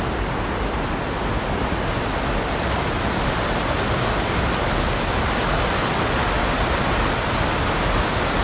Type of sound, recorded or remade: recorded